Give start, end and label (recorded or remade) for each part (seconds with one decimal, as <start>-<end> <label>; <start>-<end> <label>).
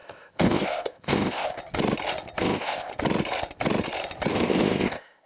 0.0-1.6 remade; 1.6-2.4 recorded; 2.4-2.9 remade; 2.9-4.3 recorded; 4.3-5.3 remade